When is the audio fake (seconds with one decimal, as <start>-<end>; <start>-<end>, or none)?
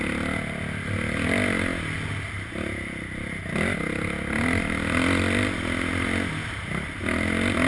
none